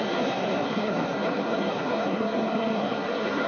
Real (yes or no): no